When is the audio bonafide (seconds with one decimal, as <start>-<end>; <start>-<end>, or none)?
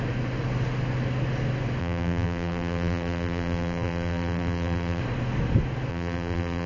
0.0-1.8; 5.0-5.9